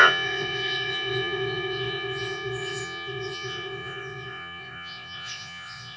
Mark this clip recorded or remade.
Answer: remade